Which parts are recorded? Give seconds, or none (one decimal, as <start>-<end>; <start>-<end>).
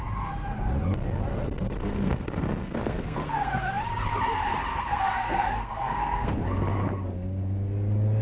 0.0-1.3; 3.8-4.7; 6.3-8.2